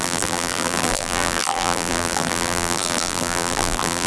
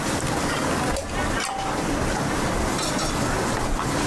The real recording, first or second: second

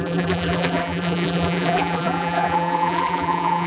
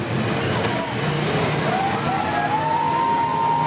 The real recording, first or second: second